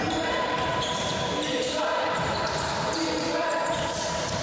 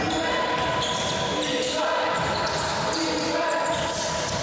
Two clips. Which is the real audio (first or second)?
second